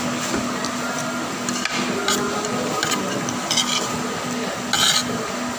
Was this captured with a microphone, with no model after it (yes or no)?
yes